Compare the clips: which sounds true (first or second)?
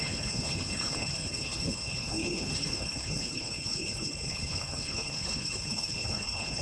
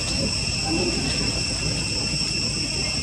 second